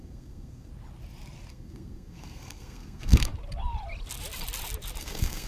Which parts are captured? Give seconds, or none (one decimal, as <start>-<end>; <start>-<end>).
0.7-1.5; 3.3-5.0